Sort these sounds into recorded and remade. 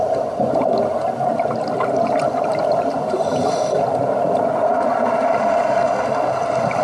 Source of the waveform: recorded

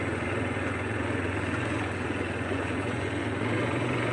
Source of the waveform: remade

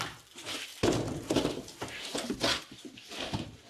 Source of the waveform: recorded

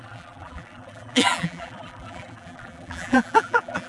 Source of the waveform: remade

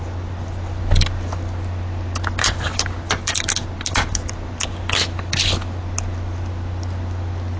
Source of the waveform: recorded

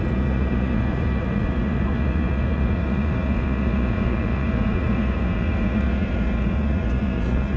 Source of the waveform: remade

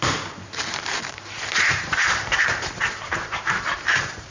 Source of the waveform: remade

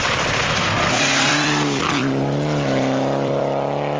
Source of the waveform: remade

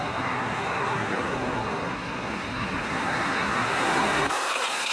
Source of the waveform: remade